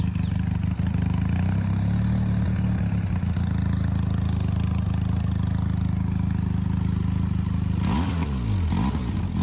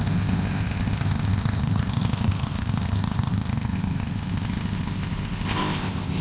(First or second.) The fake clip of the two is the second